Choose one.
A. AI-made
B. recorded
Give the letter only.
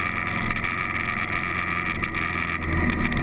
B